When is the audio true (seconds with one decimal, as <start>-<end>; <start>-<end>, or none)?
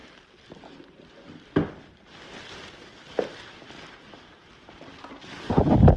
0.0-6.0